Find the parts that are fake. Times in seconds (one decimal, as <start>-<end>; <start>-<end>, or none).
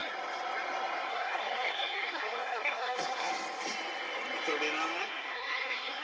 1.1-3.3; 5.0-6.0